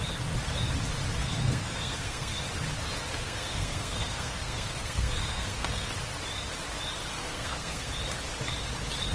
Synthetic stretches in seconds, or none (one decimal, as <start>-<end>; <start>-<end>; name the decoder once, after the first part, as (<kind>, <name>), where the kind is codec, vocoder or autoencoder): 1.2-2.4 (codec, SNAC); 3.2-5.9; 7.0-7.9

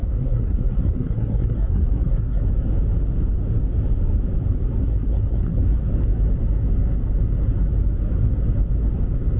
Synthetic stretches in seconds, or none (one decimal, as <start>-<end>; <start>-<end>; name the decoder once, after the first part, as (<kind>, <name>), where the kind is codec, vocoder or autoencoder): 0.0-2.4 (codec, SNAC); 4.8-5.8

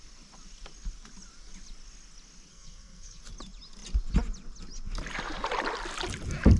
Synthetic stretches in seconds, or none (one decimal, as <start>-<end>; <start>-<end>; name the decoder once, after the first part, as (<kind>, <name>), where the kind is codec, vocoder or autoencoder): 2.5-3.2 (codec, SNAC)

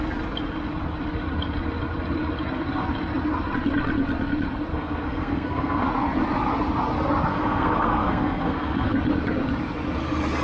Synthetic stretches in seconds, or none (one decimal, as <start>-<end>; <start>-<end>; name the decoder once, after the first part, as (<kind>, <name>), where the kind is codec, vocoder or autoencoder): 4.7-5.9 (codec, SNAC); 7.3-8.9